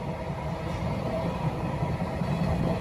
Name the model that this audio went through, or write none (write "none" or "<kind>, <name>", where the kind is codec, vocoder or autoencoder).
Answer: none